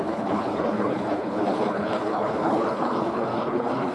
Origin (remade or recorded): remade